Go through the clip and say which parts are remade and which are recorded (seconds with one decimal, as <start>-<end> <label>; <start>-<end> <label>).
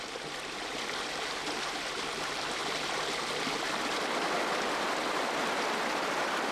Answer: 0.0-6.5 recorded